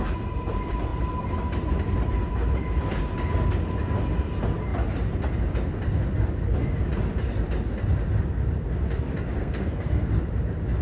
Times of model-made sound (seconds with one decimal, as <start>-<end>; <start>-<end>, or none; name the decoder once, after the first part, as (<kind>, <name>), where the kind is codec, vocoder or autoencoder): 9.4-10.1 (codec, SNAC)